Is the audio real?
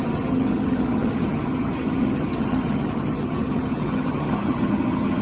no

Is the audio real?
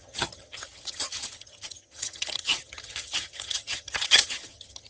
no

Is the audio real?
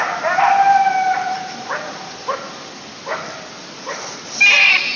yes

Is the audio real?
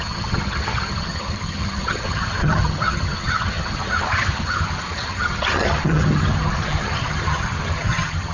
no